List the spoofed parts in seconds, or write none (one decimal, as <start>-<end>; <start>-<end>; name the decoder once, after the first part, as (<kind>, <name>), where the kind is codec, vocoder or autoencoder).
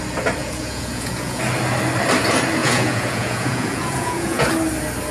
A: 0.4-1.4 (vocoder, Vocos); 2.6-4.5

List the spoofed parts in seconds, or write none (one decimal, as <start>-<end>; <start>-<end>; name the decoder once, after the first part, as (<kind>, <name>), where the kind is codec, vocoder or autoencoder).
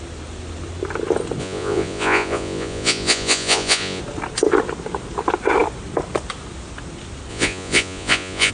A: 1.4-4.0 (vocoder, Vocos); 7.3-8.5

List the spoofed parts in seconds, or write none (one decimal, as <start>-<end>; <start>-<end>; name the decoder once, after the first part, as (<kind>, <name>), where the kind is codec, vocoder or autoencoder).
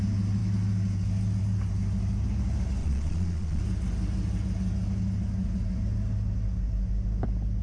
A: 2.8-3.6 (vocoder, Vocos)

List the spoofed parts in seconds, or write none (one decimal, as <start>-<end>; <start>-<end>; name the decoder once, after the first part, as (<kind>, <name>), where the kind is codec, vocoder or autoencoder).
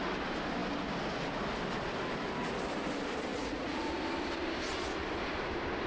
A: 3.3-3.8 (vocoder, Vocos)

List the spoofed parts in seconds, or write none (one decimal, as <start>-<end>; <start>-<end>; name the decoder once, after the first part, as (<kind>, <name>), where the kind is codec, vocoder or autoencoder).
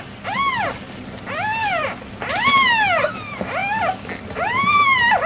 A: none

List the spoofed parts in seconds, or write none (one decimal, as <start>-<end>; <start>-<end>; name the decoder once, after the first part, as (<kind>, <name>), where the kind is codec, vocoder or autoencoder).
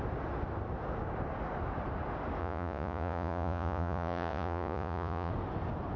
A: 2.4-5.3 (vocoder, Vocos)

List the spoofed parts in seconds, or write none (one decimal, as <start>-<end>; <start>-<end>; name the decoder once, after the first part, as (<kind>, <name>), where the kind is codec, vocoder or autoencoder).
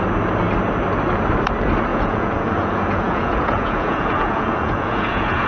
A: 1.9-5.5 (vocoder, Vocos)